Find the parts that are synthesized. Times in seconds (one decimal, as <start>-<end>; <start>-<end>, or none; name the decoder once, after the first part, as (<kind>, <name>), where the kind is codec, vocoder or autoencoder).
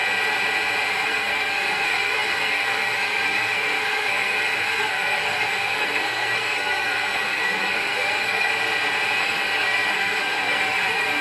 0.9-8.5 (codec, SNAC); 9.2-11.2